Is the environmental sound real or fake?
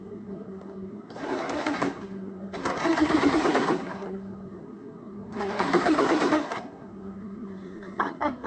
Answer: fake